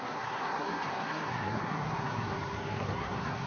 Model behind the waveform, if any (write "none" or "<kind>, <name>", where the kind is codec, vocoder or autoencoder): codec, SNAC